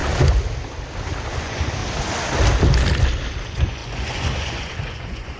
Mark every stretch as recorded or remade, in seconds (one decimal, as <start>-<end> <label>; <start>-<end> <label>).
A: 0.0-1.4 recorded; 1.4-1.8 remade; 1.8-3.4 recorded; 3.4-5.4 remade